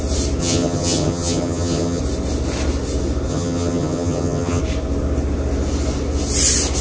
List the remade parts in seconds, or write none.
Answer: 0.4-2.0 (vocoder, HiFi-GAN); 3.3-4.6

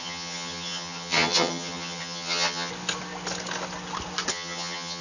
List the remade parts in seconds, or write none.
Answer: 0.0-2.7 (vocoder, HiFi-GAN); 4.3-5.0